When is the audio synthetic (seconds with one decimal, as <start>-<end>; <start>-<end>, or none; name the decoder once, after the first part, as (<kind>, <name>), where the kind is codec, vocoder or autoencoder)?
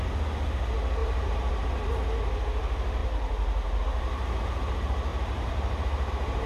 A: 1.0-1.9 (vocoder, BigVGAN v2); 3.0-3.8; 5.1-6.1